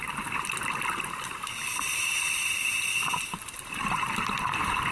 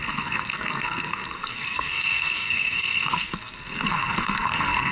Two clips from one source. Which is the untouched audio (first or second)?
first